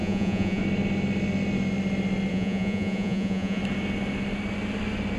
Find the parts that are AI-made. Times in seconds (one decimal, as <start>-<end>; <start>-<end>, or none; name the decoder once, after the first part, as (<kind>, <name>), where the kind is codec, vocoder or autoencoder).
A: 0.0-0.6 (vocoder, Vocos); 2.3-3.6